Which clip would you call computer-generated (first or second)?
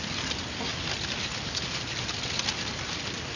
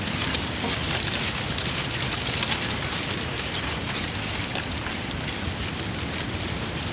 second